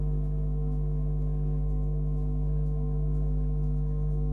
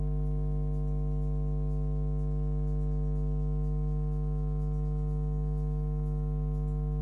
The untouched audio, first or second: second